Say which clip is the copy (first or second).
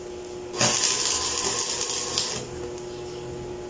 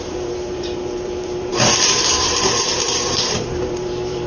second